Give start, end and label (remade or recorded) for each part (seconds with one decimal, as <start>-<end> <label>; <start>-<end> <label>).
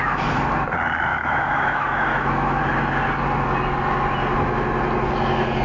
0.0-1.1 recorded; 1.1-2.6 remade; 2.6-5.6 recorded